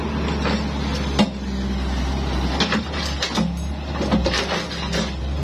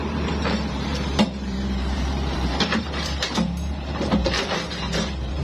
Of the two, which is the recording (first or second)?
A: first